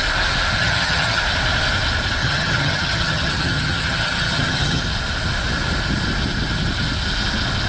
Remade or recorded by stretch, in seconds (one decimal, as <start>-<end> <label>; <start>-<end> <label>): 0.0-0.6 recorded; 0.6-1.2 remade; 1.2-2.2 recorded; 2.2-4.8 remade; 4.8-7.7 recorded